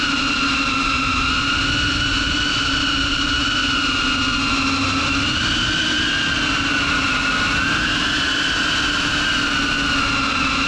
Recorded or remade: recorded